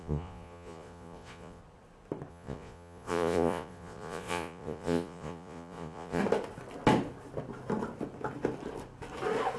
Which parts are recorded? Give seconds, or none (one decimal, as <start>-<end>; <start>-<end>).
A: 1.6-2.3; 6.2-9.6